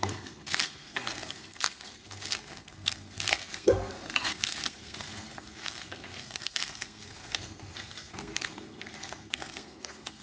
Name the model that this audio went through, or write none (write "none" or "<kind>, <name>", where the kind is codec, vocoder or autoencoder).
codec, SNAC